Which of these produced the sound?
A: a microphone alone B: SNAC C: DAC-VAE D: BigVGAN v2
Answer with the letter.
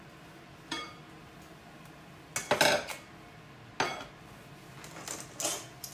A